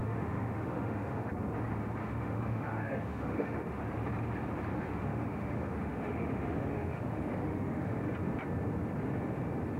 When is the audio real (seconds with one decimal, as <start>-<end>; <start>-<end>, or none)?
1.3-2.0; 3.8-4.7; 8.0-9.8